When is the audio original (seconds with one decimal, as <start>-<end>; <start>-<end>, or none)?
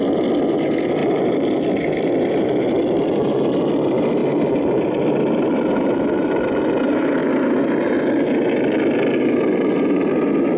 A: 0.0-1.0; 2.8-4.2; 6.6-7.2; 7.9-10.6